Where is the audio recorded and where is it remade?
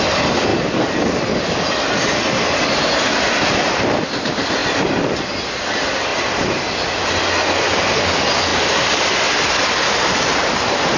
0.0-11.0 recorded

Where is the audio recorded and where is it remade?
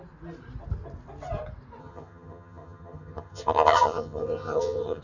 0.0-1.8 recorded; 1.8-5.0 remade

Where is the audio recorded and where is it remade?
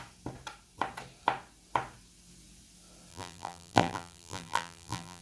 0.0-3.1 recorded; 3.1-5.2 remade